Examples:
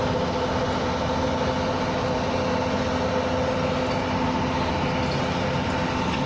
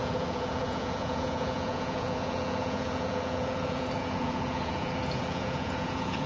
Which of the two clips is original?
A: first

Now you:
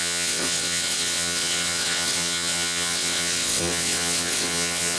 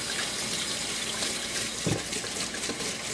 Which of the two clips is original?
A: second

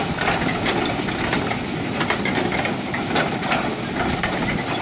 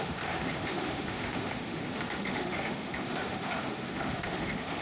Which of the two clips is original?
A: first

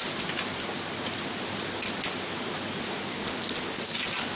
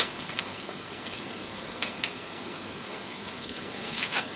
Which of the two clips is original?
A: first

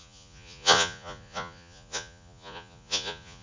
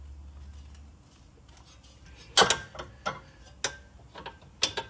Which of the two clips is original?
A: second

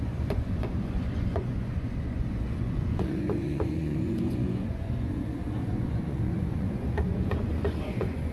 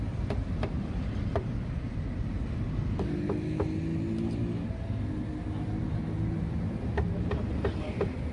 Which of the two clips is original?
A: second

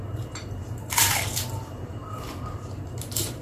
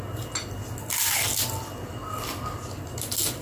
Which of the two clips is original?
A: second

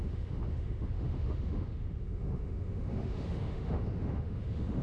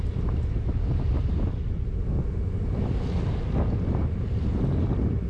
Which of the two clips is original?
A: second